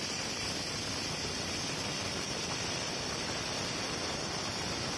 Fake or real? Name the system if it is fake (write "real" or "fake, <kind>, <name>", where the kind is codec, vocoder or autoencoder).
fake, vocoder, BigVGAN v2